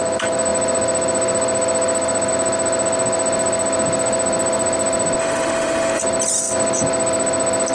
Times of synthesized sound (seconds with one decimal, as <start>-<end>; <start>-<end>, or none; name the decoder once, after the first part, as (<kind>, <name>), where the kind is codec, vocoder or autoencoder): 5.2-6.0 (autoencoder, DAC-VAE)